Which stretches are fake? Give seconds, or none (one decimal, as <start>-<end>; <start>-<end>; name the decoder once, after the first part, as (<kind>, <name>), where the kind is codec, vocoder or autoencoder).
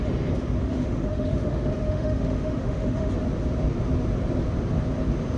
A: 0.6-3.1 (autoencoder, DAC-VAE)